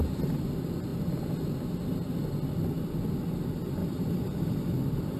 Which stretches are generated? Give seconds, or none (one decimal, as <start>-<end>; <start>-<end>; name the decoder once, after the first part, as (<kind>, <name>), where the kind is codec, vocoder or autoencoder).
3.8-4.7 (vocoder, BigVGAN v2)